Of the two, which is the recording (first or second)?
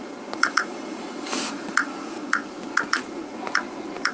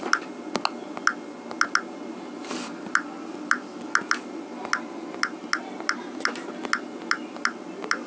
second